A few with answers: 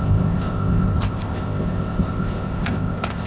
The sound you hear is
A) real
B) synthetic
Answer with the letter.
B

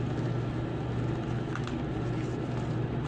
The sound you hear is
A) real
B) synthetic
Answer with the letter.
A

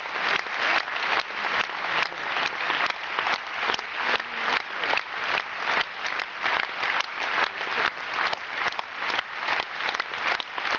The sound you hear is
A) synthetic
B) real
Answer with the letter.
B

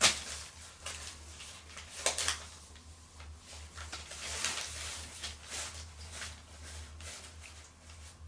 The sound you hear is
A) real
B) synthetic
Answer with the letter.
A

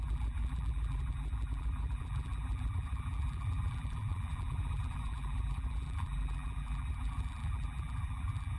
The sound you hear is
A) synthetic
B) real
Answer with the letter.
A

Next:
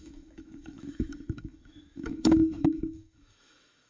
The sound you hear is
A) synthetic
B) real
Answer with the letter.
A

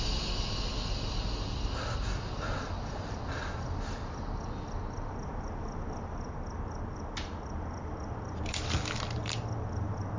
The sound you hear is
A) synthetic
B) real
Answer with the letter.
B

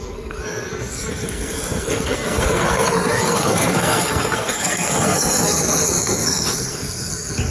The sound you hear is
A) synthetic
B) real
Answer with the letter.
A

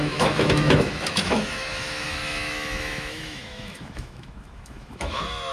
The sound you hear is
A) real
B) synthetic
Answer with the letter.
B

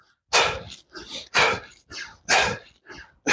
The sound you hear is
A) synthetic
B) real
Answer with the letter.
B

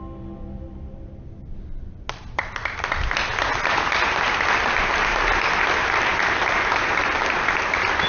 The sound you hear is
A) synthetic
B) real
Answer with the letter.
B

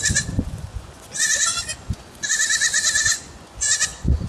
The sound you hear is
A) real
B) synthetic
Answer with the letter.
B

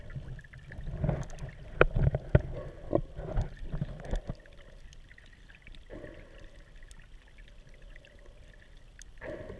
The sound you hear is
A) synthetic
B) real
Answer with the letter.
B